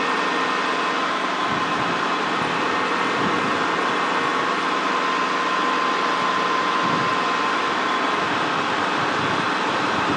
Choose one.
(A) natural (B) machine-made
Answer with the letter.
A